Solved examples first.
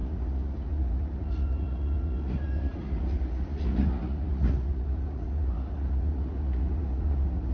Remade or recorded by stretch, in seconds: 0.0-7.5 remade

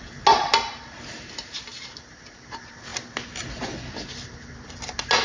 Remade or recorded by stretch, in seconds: 0.0-5.2 recorded

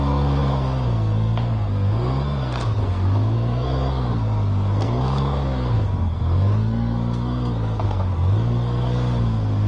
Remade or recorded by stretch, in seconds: 0.0-9.7 remade